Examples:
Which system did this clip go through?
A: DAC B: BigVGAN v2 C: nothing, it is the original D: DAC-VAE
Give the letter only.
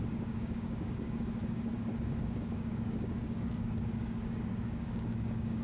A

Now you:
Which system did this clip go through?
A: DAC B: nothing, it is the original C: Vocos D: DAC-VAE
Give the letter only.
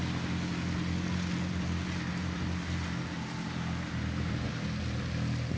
B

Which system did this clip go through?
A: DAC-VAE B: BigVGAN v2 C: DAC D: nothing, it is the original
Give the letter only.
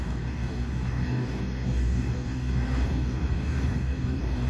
C